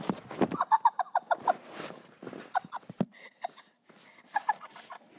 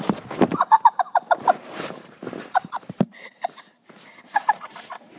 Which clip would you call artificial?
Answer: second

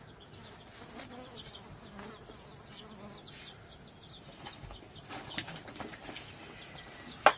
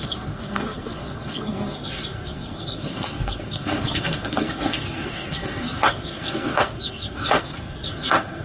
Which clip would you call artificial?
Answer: second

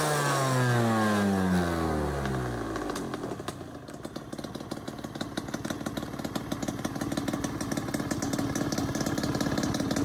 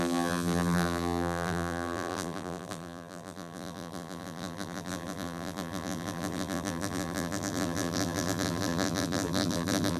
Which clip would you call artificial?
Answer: second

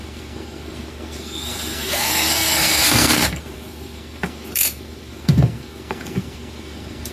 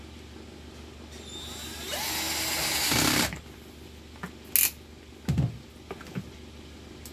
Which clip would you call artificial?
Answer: first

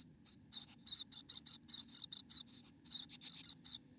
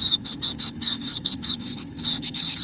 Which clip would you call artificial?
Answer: second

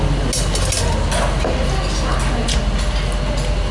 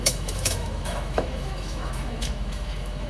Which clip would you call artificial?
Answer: second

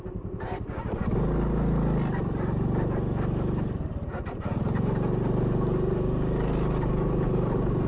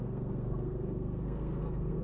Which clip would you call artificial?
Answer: second